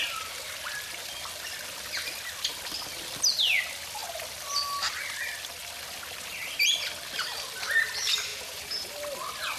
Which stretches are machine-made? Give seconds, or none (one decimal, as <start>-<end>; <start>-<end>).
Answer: 8.3-8.9